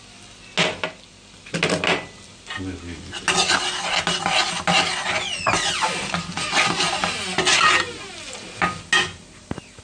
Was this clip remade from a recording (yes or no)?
no